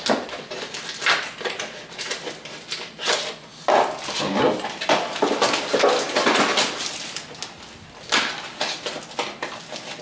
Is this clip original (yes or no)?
yes